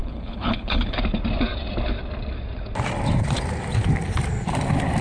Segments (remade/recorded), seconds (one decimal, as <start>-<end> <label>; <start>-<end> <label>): 0.0-1.0 remade; 1.0-5.0 recorded